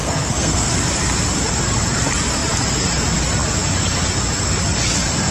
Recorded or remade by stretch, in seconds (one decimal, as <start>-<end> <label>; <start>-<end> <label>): 0.0-0.7 remade; 0.7-5.3 recorded